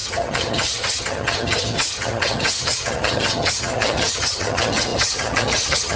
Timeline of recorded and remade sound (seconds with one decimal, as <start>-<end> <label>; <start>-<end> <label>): 0.0-6.0 remade

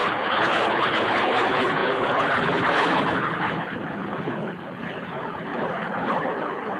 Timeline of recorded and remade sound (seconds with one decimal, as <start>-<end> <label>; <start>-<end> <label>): 0.0-6.8 remade

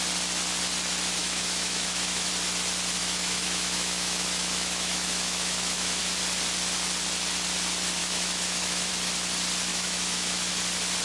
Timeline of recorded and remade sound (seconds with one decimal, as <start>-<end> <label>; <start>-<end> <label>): 0.0-1.2 recorded; 1.2-2.3 remade; 2.3-3.0 recorded; 3.0-6.0 remade; 6.0-8.0 recorded; 8.0-8.9 remade; 8.9-9.7 recorded; 9.7-10.5 remade; 10.5-11.0 recorded